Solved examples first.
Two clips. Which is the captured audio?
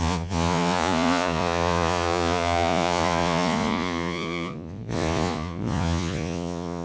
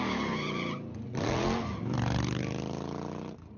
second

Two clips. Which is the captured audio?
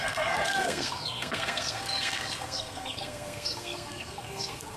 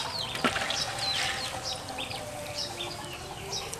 second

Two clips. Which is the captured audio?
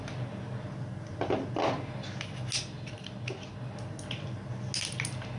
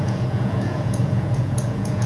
first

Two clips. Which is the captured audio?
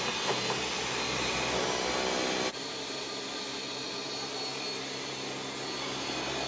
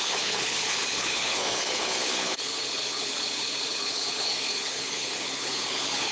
first